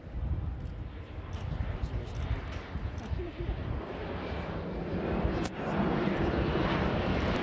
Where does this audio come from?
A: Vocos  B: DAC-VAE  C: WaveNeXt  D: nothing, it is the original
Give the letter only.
D